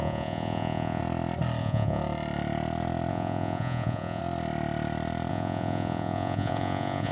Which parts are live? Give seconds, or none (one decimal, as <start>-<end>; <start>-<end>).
1.0-1.6; 2.0-3.1; 4.2-5.3